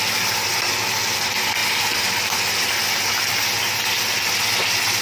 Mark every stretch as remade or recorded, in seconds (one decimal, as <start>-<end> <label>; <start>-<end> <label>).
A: 0.0-5.0 recorded